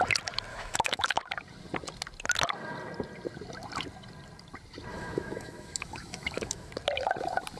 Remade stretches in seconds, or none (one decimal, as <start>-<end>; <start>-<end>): 0.5-1.2; 4.9-6.7